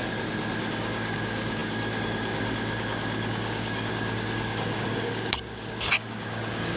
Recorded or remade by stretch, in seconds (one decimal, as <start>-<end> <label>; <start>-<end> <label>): 0.0-0.6 recorded; 0.6-6.8 remade